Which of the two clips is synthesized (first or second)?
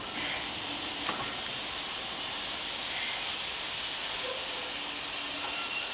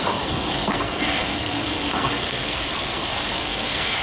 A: second